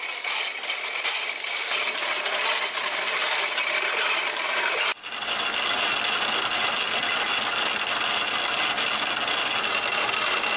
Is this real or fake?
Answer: real